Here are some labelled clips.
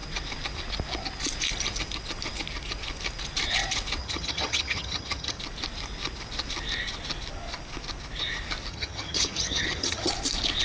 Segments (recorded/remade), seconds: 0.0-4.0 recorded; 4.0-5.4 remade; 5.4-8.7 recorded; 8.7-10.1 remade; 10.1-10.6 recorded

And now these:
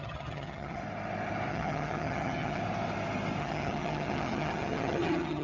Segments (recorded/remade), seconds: 0.0-0.8 remade; 0.8-1.5 recorded; 1.5-2.6 remade; 2.6-3.4 recorded; 3.4-5.4 remade

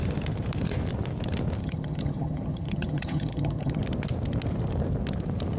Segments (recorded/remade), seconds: 0.0-1.6 recorded; 1.6-3.8 remade; 3.8-5.6 recorded

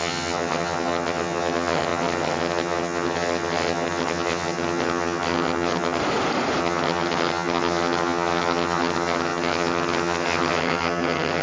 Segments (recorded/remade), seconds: 0.0-6.0 remade; 6.0-6.6 recorded; 6.6-11.4 remade